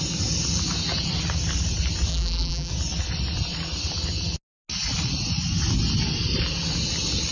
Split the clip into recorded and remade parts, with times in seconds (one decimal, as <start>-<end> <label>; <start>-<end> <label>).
0.0-2.1 recorded; 2.1-2.7 remade; 2.7-7.3 recorded